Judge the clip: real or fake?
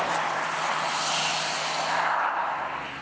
real